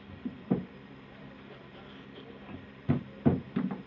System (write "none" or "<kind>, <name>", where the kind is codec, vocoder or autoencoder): none